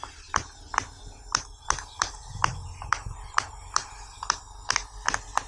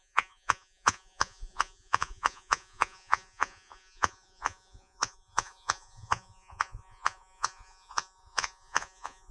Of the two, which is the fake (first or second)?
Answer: second